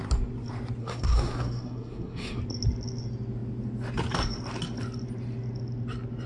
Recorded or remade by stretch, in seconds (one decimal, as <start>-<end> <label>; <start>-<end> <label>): 0.0-0.8 recorded; 0.8-2.4 remade; 2.4-6.3 recorded